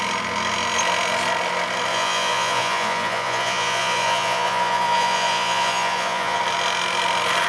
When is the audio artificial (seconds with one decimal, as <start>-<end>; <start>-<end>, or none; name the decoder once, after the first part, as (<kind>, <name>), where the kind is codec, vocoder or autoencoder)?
1.9-6.4 (vocoder, Vocos)